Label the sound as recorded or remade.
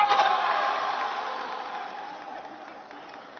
recorded